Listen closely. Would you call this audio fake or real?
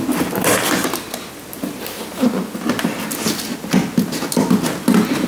real